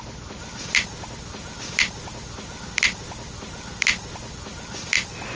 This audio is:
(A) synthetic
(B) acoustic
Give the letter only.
B